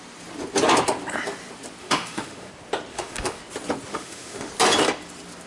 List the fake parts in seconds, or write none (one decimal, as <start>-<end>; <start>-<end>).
1.8-2.5; 2.9-3.4; 3.9-4.5